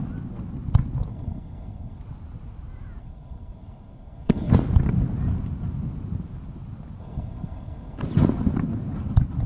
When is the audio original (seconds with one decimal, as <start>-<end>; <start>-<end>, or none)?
0.0-1.1; 2.0-3.0; 4.5-7.0; 8.0-9.5